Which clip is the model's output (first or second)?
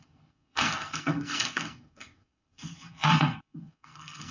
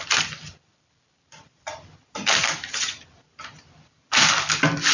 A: first